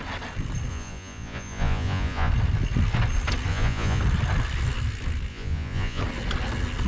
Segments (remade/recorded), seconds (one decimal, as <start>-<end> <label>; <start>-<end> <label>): 0.0-0.7 recorded; 0.7-2.3 remade; 2.3-3.5 recorded; 3.5-4.0 remade; 4.0-5.3 recorded; 5.3-6.0 remade; 6.0-6.9 recorded